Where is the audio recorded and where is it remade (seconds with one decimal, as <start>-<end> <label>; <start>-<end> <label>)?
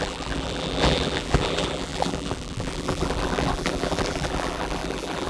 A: 0.0-5.3 remade